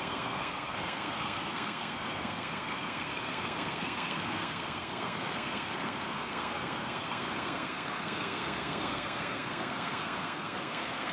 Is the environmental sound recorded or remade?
remade